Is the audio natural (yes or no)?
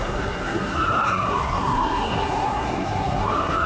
no